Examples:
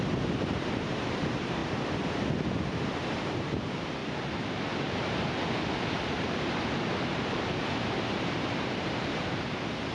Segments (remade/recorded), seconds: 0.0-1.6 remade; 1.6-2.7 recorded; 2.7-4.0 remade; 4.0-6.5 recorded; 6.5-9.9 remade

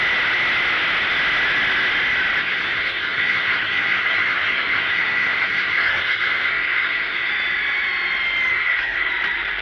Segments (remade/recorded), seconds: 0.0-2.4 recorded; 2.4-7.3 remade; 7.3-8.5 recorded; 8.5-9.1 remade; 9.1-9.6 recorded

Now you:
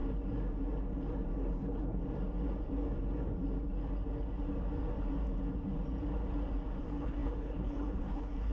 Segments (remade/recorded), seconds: 0.0-1.5 recorded; 1.5-2.0 remade; 2.0-6.8 recorded; 6.8-8.5 remade

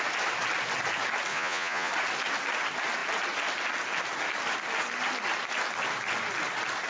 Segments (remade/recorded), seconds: 0.0-1.3 recorded; 1.3-1.9 remade; 1.9-6.9 recorded

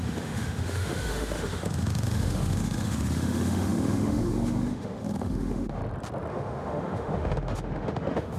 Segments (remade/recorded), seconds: 0.0-5.8 remade; 5.8-6.3 recorded; 6.3-8.4 remade

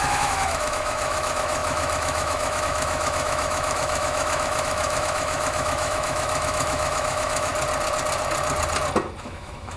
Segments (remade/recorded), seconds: 0.0-7.5 remade; 7.5-9.2 recorded; 9.2-9.8 remade

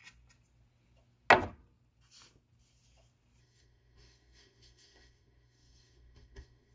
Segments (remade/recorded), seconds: 0.0-3.4 recorded; 3.4-6.7 remade

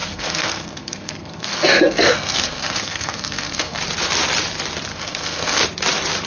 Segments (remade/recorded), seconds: 0.0-3.8 remade; 3.8-4.9 recorded; 4.9-5.6 remade; 5.6-6.3 recorded